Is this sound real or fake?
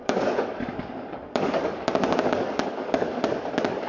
fake